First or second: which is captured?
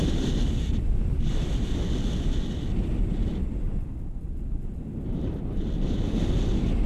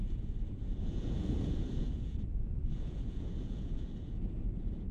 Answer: first